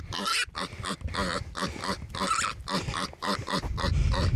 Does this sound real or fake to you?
real